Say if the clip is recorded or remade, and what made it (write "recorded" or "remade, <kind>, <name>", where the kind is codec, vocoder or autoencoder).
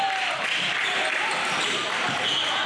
recorded